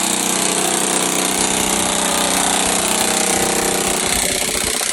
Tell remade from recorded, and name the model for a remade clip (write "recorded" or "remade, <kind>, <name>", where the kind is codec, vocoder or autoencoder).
recorded